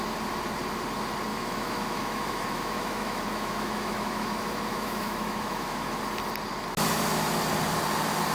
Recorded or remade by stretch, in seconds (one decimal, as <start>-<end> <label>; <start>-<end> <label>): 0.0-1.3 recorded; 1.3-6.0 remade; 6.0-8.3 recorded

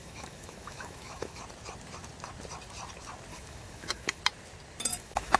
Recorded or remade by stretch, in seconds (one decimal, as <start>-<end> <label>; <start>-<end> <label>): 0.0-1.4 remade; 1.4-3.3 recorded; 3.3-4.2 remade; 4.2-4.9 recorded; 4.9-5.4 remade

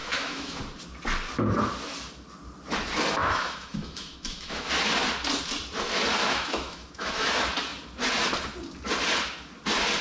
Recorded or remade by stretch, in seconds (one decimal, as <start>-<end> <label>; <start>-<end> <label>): 0.0-0.6 remade; 0.6-3.2 recorded; 3.2-4.7 remade; 4.7-6.2 recorded; 6.2-7.3 remade; 7.3-10.0 recorded